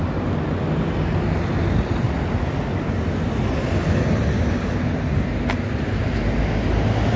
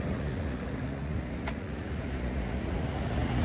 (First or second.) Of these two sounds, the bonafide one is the first